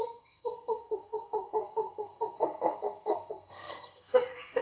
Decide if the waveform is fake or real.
fake